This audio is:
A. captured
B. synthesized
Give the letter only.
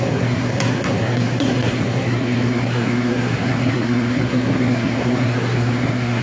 B